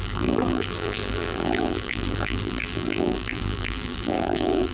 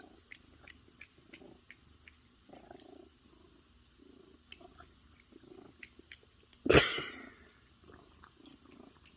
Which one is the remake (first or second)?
first